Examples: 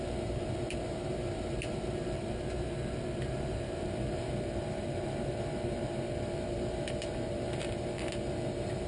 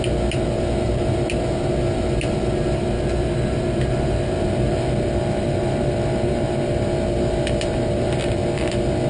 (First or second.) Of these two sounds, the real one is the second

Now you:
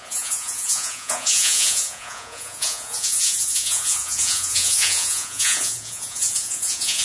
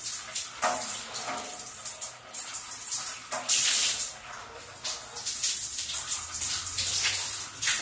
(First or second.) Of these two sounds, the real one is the second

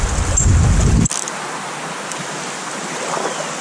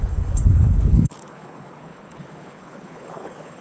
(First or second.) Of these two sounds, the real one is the first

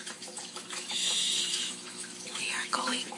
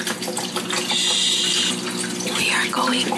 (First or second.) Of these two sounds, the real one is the second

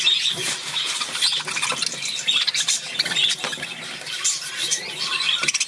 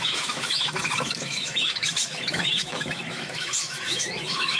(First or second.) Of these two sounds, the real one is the first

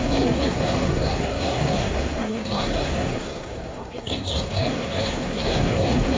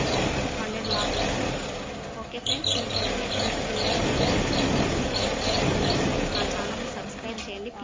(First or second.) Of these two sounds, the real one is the second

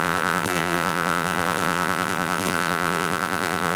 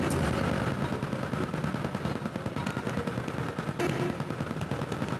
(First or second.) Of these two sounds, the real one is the second